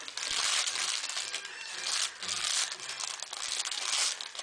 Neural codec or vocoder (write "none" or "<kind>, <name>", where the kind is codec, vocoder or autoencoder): none